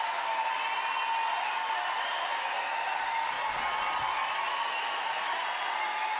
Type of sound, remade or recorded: recorded